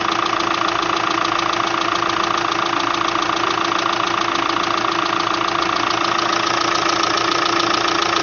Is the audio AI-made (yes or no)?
no